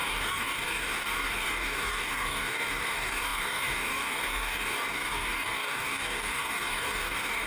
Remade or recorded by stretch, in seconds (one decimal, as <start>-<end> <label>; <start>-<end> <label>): 0.0-7.5 remade